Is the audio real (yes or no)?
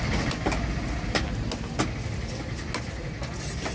yes